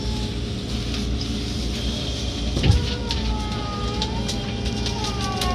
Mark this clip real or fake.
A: real